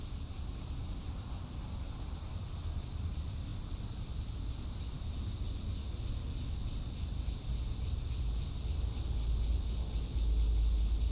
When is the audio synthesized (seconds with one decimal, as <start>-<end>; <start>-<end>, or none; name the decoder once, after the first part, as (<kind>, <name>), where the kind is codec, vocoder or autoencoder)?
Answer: none

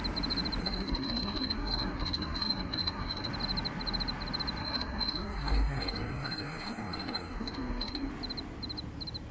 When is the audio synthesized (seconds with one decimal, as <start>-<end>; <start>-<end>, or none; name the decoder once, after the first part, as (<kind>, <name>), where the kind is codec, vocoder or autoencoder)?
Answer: 0.6-3.3 (codec, SNAC); 4.6-8.1

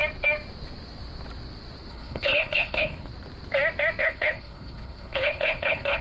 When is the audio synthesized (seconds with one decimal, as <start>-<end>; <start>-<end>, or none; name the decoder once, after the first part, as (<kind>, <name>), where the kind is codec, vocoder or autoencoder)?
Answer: 1.9-3.1 (codec, HILCodec); 4.0-6.0

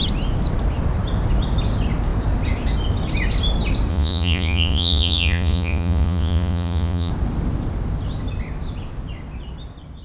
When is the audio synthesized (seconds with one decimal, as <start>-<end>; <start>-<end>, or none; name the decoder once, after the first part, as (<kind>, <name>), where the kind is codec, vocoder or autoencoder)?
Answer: 3.9-7.1 (vocoder, Vocos)

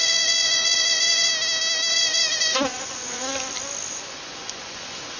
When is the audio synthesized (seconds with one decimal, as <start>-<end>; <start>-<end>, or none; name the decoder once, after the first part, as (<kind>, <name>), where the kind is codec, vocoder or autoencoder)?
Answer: 0.0-1.3 (vocoder, Vocos); 1.9-3.3; 3.9-5.2

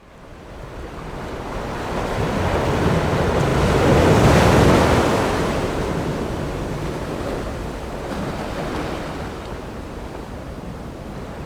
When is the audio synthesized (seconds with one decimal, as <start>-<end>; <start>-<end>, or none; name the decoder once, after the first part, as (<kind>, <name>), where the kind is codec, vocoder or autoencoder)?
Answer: none

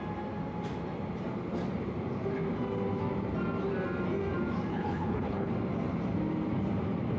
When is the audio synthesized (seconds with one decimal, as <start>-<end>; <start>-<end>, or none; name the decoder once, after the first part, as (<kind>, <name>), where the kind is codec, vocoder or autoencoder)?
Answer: 4.7-5.5 (codec, HILCodec)

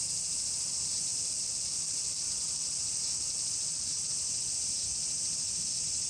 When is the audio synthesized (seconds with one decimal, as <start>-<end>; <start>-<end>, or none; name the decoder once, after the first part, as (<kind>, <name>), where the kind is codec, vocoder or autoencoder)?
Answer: 1.1-4.1 (vocoder, BigVGAN v2)